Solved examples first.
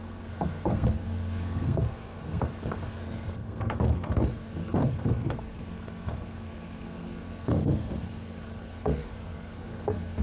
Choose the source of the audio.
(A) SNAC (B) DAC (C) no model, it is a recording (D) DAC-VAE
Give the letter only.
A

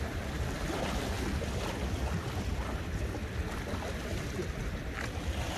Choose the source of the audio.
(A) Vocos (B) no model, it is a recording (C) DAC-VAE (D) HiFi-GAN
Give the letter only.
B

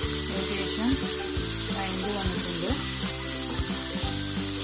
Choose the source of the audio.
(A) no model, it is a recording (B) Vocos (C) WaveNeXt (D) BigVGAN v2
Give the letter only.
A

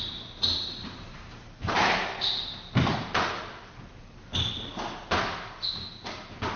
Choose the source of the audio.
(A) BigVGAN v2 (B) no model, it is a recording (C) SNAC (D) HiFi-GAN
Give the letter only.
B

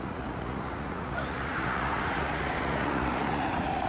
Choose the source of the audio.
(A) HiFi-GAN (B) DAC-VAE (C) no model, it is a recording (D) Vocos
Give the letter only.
D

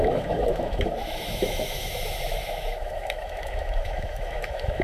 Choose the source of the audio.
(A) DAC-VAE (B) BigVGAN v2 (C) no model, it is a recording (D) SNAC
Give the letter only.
A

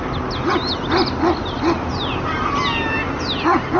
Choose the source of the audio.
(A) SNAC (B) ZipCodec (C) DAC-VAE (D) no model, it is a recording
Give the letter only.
D